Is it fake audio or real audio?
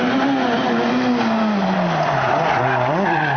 real